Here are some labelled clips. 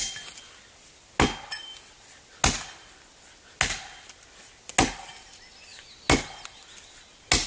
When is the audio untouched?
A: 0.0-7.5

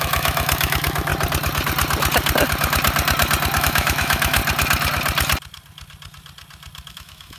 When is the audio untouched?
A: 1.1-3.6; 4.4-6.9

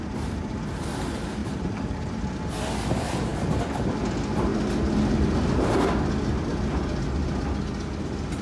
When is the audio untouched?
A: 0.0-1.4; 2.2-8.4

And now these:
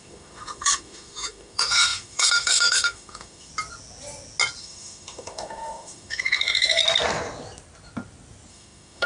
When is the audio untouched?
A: 3.5-4.6; 6.8-8.5

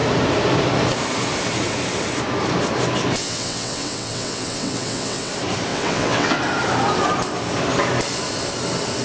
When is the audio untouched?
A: 0.0-3.2; 5.3-5.7; 6.4-9.0

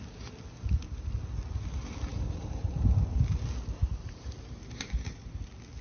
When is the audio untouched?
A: 0.0-2.1; 2.7-3.8; 5.1-5.8

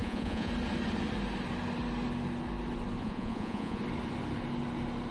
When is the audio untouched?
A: 0.5-3.0; 3.8-5.1